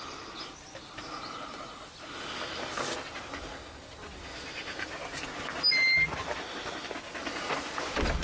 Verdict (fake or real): real